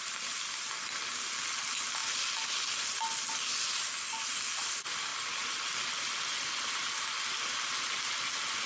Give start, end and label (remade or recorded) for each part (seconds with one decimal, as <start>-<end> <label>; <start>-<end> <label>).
0.0-8.7 recorded